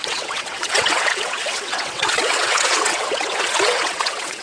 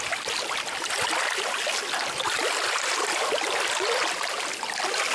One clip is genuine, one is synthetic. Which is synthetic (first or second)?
first